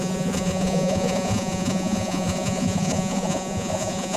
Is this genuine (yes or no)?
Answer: no